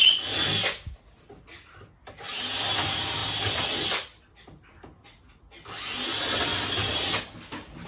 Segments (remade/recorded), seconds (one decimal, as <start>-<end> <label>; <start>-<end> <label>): 0.0-7.9 recorded